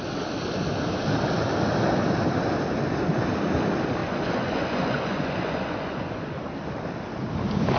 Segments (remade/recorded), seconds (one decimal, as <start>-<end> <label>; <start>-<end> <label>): 0.0-4.0 recorded; 4.0-6.4 remade; 6.4-7.8 recorded

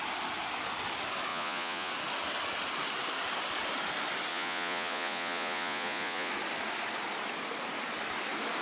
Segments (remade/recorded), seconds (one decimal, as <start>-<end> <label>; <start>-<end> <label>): 0.0-1.3 recorded; 1.3-1.9 remade; 1.9-4.3 recorded; 4.3-6.3 remade; 6.3-8.6 recorded